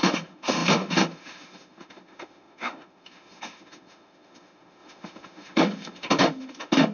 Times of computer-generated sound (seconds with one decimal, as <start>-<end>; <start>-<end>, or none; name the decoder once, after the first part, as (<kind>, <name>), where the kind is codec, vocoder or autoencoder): 0.0-6.9 (autoencoder, DAC-VAE)